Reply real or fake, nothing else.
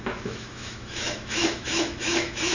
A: fake